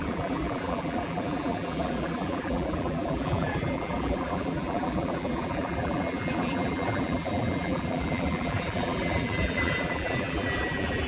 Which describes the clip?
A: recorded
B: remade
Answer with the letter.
B